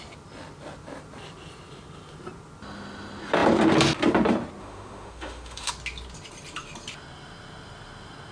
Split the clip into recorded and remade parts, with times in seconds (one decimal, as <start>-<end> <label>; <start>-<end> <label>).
0.0-4.6 recorded; 4.6-5.7 remade; 5.7-8.3 recorded